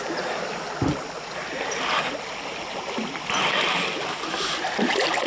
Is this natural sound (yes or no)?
yes